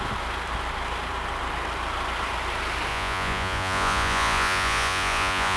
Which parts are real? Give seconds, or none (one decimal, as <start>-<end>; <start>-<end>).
0.0-2.9